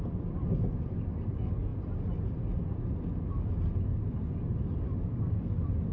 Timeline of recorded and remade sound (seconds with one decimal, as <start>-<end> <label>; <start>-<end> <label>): 0.0-5.9 recorded